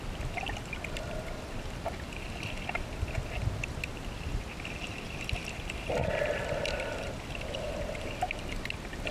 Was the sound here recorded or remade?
remade